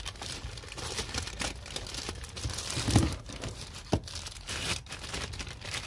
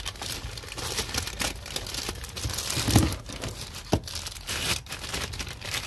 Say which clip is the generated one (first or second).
first